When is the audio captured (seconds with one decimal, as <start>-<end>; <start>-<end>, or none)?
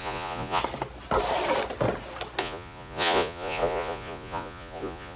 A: 0.6-2.4